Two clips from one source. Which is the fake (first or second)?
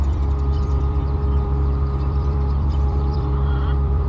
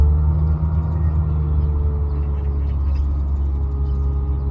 first